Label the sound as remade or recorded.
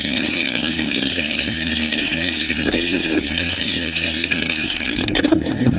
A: remade